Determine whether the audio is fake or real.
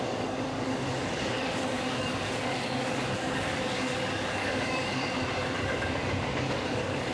fake